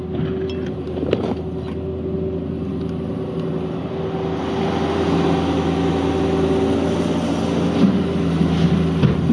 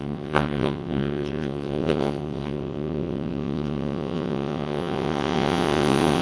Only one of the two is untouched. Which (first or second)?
first